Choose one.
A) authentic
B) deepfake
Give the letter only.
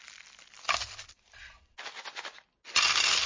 A